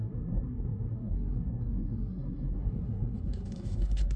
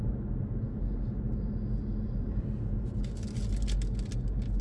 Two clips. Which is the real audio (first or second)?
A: second